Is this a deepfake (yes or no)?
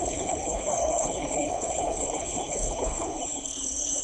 yes